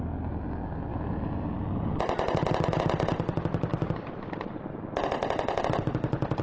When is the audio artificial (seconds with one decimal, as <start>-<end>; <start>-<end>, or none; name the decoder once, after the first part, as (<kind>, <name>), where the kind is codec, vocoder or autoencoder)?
none